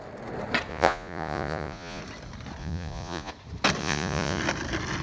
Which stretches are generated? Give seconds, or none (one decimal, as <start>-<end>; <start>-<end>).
0.7-2.0; 2.6-3.3; 3.8-4.4